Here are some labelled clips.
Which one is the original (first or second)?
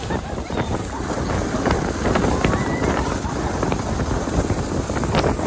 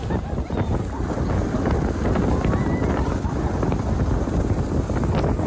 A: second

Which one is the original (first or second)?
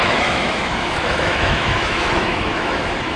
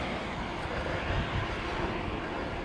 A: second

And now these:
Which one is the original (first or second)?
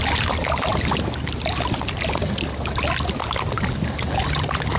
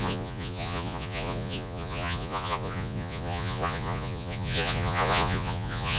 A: first